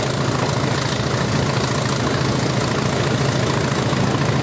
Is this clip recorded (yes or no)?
yes